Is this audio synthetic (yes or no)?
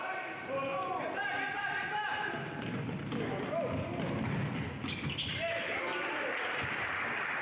no